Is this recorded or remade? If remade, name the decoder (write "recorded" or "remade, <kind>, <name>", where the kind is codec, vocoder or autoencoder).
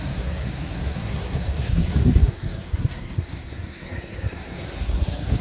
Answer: remade, codec, SNAC